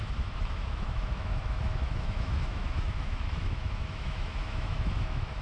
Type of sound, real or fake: fake